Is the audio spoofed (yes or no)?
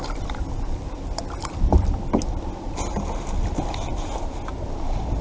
no